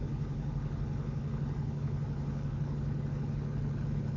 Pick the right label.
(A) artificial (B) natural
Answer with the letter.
A